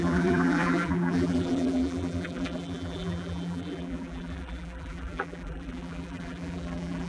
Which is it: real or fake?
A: fake